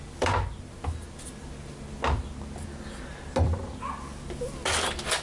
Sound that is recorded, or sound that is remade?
recorded